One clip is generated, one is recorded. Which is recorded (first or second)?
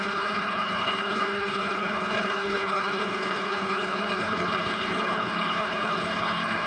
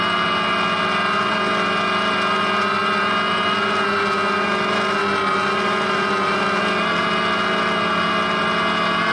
second